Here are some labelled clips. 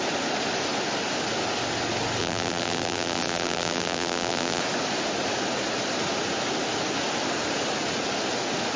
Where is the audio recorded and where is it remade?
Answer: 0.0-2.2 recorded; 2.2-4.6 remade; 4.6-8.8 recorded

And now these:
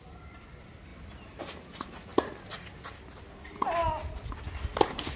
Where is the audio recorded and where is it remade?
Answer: 0.0-5.2 recorded